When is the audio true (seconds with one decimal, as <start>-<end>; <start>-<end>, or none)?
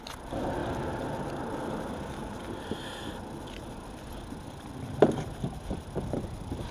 0.6-1.4